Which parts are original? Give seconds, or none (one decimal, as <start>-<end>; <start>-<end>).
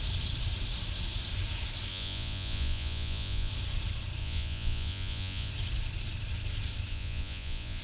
0.0-1.9; 3.5-4.2; 5.5-6.9